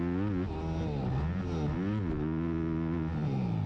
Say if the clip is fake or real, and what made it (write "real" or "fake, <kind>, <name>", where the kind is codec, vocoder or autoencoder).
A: real